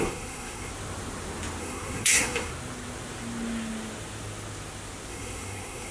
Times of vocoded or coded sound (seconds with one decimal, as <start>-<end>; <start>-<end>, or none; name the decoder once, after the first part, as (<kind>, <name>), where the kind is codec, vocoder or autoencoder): 0.0-0.7 (codec, SNAC); 1.6-2.5; 5.1-5.9